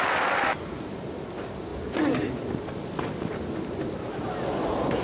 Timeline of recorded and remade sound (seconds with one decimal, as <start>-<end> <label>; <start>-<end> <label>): 0.0-5.0 recorded